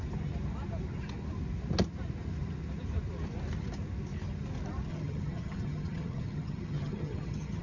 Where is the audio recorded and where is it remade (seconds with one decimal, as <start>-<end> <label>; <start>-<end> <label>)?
0.0-4.9 recorded; 4.9-7.6 remade